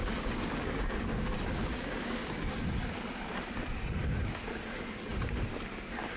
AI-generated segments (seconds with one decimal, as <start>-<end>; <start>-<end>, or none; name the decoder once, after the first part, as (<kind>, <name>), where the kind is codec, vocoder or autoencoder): 0.0-2.5 (codec, DAC)